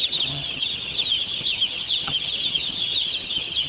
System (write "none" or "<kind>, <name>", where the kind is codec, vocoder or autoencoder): vocoder, HiFi-GAN